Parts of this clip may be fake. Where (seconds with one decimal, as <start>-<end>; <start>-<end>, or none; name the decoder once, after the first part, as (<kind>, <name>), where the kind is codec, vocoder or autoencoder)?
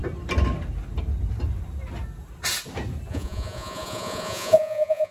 3.1-5.1 (vocoder, Vocos)